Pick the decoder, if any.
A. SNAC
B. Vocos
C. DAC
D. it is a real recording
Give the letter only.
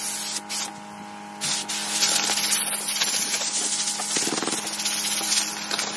D